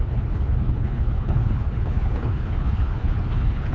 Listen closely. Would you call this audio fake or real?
fake